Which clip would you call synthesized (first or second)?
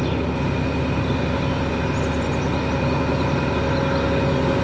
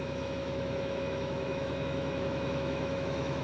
second